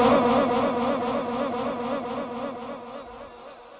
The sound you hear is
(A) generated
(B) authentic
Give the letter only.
B